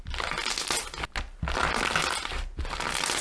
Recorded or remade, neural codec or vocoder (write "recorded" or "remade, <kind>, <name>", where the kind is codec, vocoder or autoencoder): recorded